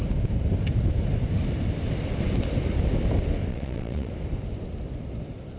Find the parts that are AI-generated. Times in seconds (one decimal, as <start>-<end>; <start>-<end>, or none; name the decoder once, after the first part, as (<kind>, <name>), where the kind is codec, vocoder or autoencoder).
3.5-4.1 (vocoder, WaveNeXt)